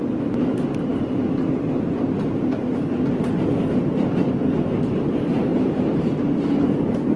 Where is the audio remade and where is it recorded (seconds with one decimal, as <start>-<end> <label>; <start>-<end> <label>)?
0.0-7.2 recorded

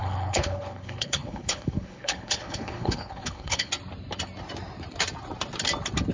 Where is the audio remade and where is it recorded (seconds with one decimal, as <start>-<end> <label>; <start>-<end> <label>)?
0.0-3.7 remade; 3.7-6.1 recorded

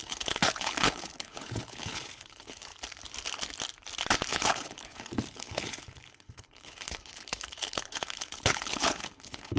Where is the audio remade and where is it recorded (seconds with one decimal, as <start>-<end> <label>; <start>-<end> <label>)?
0.0-2.7 remade; 2.7-4.3 recorded; 4.3-9.6 remade

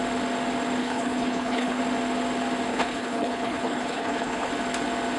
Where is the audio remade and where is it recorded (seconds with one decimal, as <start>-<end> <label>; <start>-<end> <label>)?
0.0-0.8 recorded; 0.8-1.8 remade; 1.8-2.7 recorded; 2.7-4.5 remade; 4.5-5.2 recorded

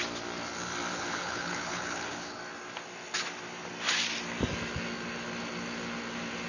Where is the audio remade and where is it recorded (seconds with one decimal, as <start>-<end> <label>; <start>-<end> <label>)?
0.0-0.9 recorded; 0.9-2.4 remade; 2.4-6.5 recorded

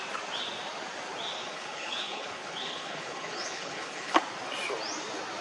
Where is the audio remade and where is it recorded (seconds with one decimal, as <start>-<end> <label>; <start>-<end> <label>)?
0.0-1.4 recorded; 1.4-4.2 remade; 4.2-5.4 recorded

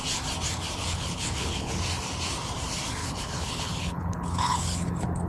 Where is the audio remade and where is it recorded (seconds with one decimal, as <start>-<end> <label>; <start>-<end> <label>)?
0.0-0.8 recorded; 0.8-1.8 remade; 1.8-3.0 recorded; 3.0-5.3 remade